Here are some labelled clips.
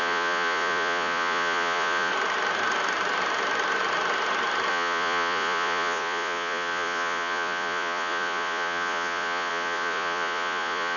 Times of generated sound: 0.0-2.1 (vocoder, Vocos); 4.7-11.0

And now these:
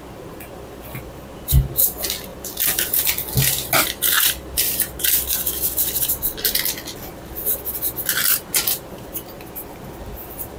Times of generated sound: none

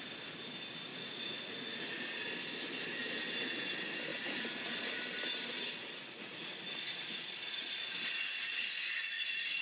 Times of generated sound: 0.9-2.0 (vocoder, Vocos); 4.1-4.9; 5.8-9.6